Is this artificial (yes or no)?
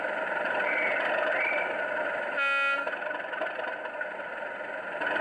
no